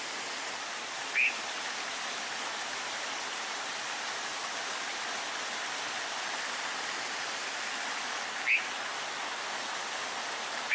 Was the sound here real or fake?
real